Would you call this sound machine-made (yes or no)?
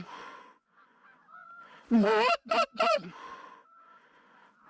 yes